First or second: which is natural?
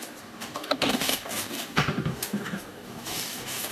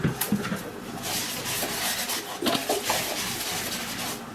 second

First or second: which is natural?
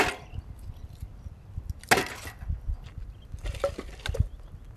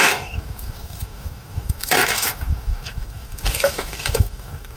first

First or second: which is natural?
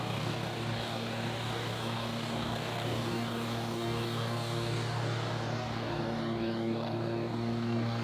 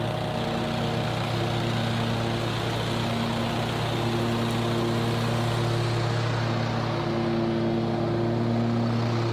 second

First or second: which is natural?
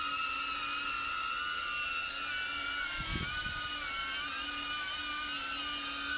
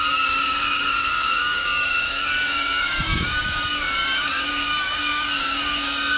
first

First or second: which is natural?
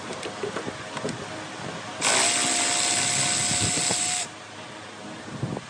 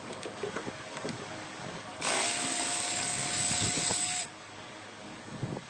first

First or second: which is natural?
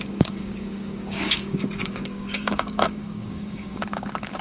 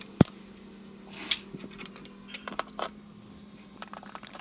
second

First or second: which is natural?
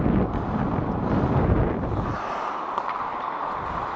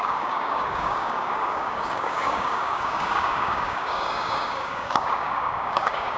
first